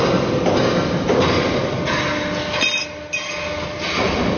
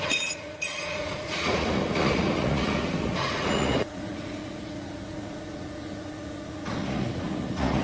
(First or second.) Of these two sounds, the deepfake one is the second